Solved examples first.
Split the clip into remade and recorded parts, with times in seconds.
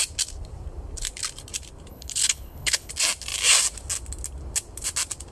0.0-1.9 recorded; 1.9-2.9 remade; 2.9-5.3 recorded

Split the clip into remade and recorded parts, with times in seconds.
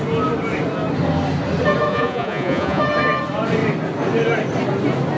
0.0-1.9 recorded; 1.9-2.8 remade; 2.8-5.2 recorded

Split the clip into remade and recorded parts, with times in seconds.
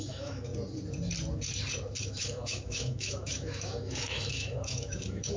0.0-0.5 remade; 0.5-2.0 recorded; 2.0-5.4 remade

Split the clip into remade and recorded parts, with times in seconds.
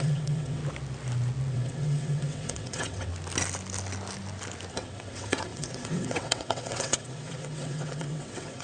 0.0-0.6 remade; 0.6-1.5 recorded; 1.5-3.1 remade; 3.1-4.7 recorded; 4.7-8.6 remade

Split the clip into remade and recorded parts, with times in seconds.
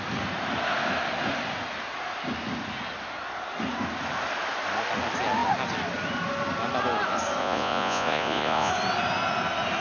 0.0-7.4 recorded; 7.4-8.7 remade; 8.7-9.8 recorded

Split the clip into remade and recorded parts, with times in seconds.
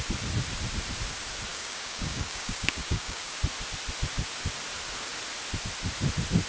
0.0-1.5 recorded; 1.5-3.4 remade; 3.4-6.5 recorded